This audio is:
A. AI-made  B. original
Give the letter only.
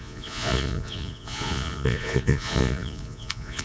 A